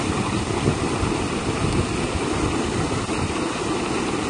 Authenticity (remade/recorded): recorded